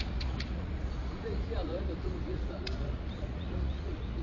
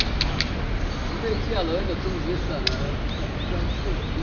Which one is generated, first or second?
first